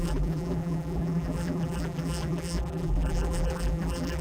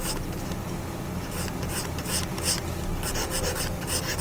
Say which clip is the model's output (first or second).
first